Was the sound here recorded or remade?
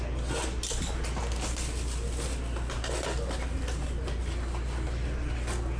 recorded